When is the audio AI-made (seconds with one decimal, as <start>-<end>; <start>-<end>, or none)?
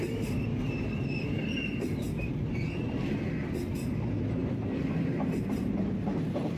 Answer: none